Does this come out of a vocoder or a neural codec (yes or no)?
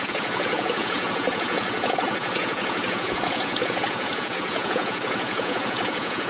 yes